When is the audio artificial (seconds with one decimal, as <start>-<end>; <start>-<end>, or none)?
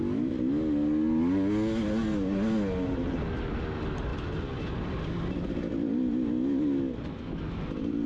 none